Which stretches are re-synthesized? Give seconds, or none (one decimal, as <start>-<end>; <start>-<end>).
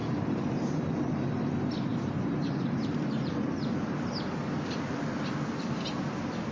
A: 0.0-0.6; 1.9-3.3